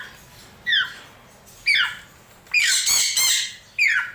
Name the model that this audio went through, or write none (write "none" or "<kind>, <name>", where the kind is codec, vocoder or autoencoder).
none